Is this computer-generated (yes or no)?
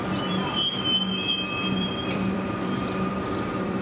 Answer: yes